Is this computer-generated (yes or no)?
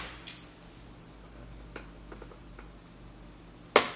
no